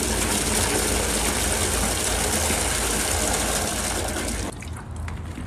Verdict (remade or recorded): recorded